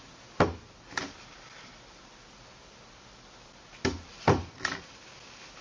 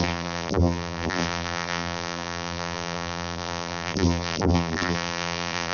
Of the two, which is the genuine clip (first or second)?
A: first